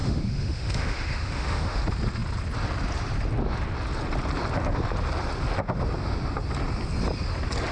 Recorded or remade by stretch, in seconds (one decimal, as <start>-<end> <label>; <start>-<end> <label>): 0.0-1.8 remade; 1.8-7.7 recorded